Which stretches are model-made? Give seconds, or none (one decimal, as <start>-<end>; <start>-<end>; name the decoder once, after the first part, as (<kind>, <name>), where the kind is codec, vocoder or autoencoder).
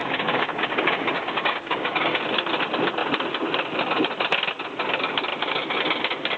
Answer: 0.0-2.2 (codec, DAC)